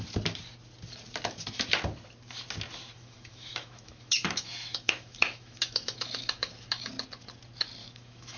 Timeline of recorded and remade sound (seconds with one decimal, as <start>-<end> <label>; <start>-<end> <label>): 0.0-2.8 recorded; 2.8-6.9 remade; 6.9-7.8 recorded; 7.8-8.4 remade